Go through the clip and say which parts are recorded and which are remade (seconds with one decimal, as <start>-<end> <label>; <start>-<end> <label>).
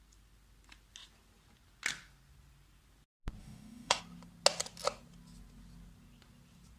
0.0-3.4 recorded; 3.4-4.0 remade; 4.0-6.8 recorded